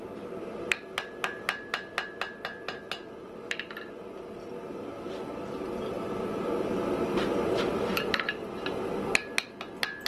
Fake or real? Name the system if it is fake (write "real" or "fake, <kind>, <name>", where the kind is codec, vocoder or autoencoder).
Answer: real